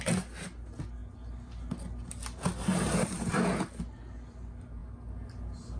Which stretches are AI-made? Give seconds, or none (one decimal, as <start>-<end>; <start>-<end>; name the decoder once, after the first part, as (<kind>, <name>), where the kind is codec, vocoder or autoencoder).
2.7-3.3 (vocoder, BigVGAN v2)